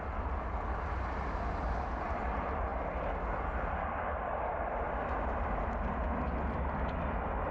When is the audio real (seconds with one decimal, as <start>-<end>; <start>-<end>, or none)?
0.0-7.5